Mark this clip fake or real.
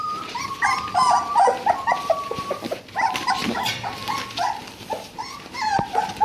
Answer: fake